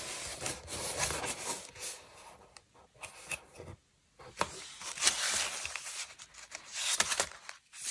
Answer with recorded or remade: recorded